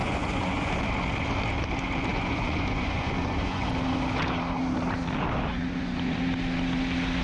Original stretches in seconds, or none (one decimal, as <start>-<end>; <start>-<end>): 0.7-2.1; 3.7-5.5; 6.2-7.2